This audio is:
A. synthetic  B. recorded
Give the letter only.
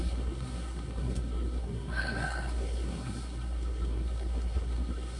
A